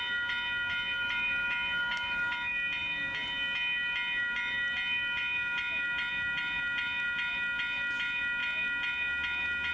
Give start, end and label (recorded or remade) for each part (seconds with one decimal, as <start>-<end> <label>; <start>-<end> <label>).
0.0-9.7 recorded